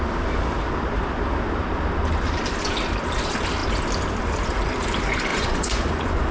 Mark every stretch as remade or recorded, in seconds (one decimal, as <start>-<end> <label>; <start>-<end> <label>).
0.0-5.3 recorded; 5.3-6.3 remade